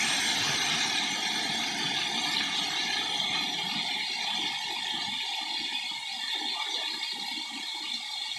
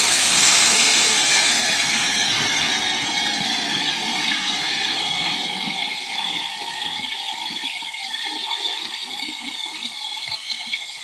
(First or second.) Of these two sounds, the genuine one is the first